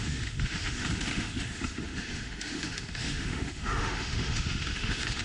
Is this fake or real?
fake